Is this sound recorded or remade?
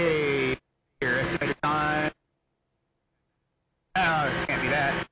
recorded